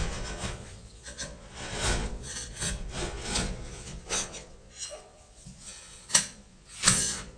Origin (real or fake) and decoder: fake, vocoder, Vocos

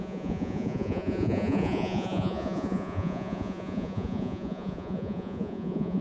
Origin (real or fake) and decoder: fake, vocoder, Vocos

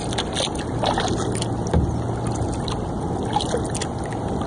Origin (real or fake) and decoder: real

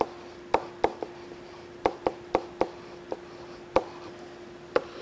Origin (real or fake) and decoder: real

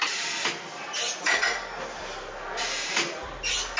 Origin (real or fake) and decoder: real